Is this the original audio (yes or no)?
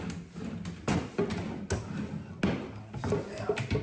yes